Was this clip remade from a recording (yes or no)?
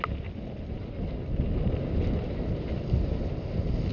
no